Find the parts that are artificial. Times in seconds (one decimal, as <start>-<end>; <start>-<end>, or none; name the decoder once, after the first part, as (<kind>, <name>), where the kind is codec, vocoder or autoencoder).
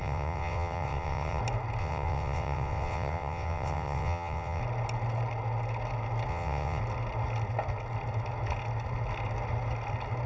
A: 0.0-1.4 (vocoder, WaveNeXt); 1.8-4.6; 6.3-6.8